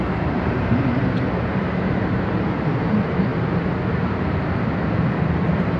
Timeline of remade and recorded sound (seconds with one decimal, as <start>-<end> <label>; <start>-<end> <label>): 0.0-3.3 remade; 3.3-3.9 recorded; 3.9-5.8 remade